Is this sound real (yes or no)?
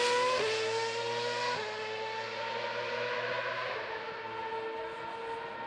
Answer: yes